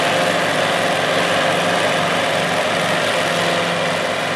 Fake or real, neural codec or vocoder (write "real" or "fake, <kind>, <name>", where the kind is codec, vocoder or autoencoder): real